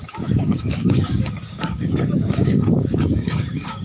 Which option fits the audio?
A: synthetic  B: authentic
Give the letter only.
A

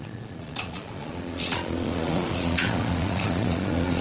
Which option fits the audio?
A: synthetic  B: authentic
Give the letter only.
A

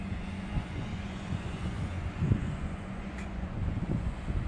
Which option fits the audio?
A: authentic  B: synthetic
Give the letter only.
B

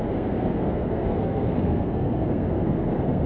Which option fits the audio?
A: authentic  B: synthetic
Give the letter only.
B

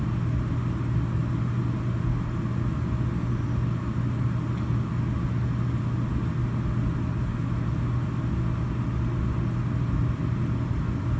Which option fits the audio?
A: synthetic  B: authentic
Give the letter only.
B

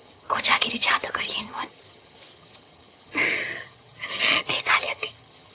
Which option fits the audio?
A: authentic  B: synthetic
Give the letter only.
B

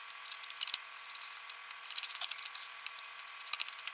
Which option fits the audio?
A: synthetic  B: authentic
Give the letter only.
B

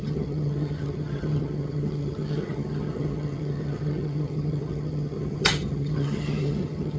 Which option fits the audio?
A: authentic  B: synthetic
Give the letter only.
B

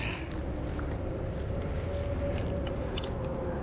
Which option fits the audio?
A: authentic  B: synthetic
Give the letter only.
A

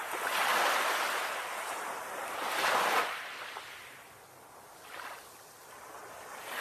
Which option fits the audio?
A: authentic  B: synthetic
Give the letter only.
A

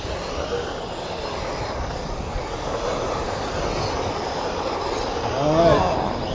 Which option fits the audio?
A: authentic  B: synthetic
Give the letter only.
A